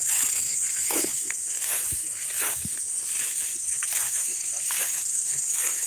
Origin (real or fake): fake